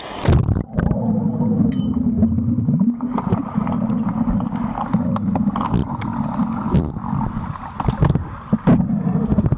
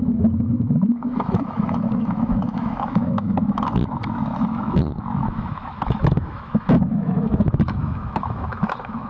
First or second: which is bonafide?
first